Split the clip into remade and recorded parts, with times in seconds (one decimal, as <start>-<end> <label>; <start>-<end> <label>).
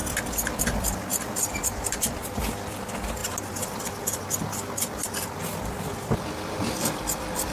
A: 0.0-0.6 recorded; 0.6-3.2 remade; 3.2-5.6 recorded; 5.6-7.5 remade